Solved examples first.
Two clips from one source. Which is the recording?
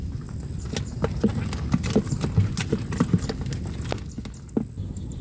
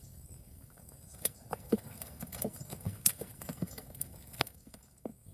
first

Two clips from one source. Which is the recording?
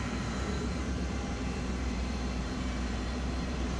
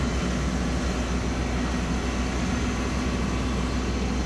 second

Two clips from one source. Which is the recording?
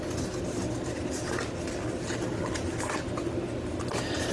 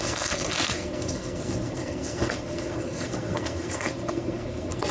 first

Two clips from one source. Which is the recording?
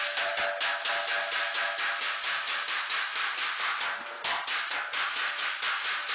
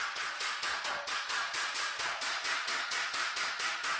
first